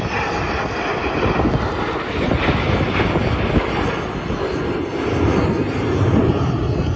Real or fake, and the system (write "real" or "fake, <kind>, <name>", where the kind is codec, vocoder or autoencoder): real